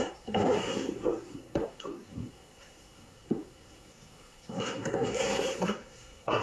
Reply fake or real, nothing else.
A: fake